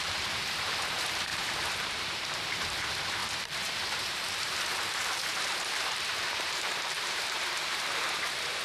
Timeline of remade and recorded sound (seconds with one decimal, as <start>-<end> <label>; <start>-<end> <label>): 0.0-8.6 remade